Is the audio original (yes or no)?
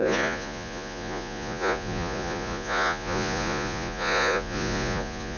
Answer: no